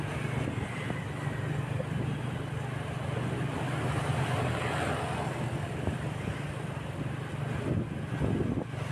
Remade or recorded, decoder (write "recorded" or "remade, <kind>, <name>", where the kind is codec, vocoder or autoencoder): recorded